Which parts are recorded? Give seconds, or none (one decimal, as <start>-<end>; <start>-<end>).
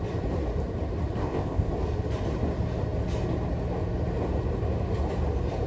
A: 0.0-1.2; 1.7-5.7